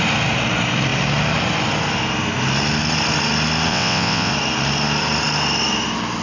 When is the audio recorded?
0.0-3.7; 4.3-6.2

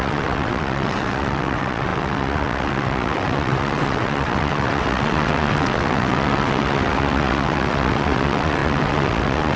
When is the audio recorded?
none